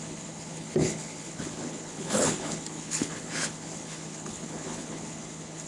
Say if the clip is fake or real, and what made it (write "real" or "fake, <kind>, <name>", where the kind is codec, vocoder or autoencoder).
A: fake, codec, HILCodec